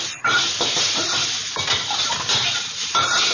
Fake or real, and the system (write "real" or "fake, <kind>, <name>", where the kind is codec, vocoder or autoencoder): real